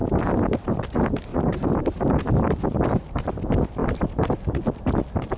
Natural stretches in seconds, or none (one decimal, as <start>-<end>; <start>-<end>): 0.8-1.3; 2.3-3.8; 4.3-5.4

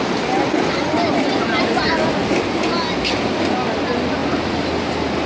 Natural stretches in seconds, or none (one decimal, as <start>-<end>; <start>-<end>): 0.0-5.3

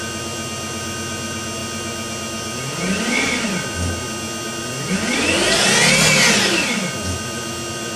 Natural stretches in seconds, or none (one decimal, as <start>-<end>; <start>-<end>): 0.0-8.0

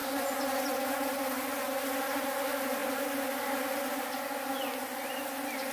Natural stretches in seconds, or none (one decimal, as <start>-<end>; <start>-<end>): 0.0-5.7

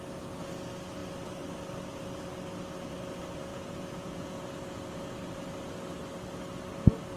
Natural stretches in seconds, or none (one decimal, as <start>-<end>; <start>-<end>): 0.0-3.5; 4.3-7.2

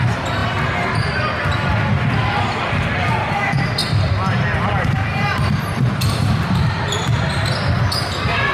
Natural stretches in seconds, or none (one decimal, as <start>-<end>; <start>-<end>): 0.0-3.8; 7.8-8.5